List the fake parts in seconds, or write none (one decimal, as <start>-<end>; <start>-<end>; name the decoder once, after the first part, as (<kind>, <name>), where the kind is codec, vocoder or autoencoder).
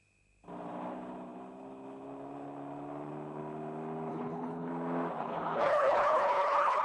4.1-4.7 (codec, HILCodec); 5.2-6.8